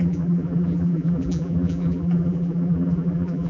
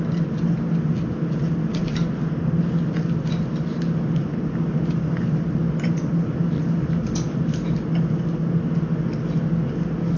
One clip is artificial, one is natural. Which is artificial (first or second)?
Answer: first